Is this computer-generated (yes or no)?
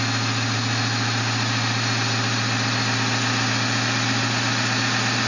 no